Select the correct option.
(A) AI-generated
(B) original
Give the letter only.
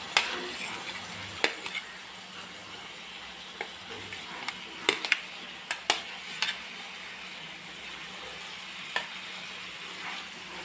B